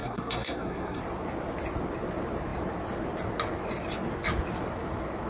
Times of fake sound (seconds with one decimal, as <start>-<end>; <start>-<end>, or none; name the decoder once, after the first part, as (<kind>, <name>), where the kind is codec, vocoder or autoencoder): 0.0-1.0 (codec, SNAC)